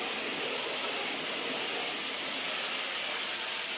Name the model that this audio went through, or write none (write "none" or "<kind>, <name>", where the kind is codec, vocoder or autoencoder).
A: none